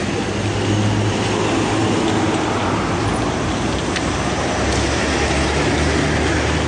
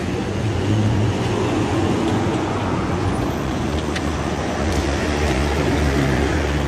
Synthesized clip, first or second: second